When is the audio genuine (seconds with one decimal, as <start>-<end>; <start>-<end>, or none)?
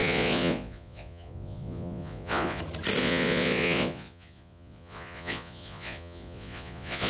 2.6-3.0